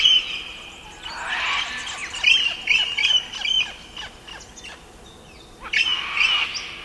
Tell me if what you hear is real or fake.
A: real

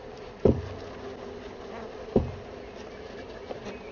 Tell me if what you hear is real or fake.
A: real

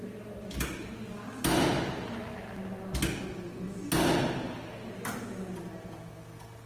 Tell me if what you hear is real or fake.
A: real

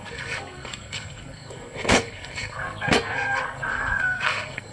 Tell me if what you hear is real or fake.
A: fake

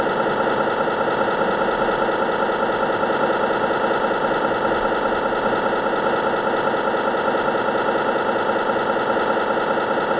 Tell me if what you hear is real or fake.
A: real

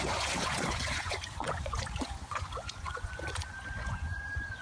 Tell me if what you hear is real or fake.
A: fake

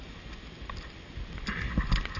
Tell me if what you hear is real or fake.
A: real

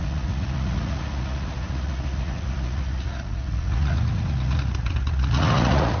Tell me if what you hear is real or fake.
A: fake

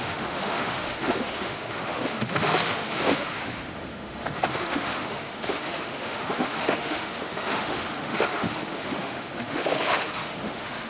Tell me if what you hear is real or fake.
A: fake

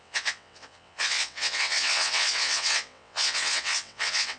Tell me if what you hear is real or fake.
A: fake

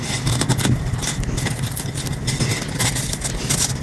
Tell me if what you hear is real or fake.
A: real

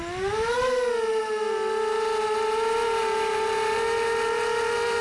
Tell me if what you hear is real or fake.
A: fake